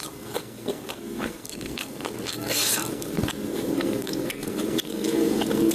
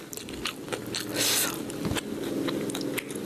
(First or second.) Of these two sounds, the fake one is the first